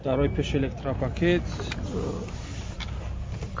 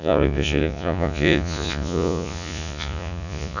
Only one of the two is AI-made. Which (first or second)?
second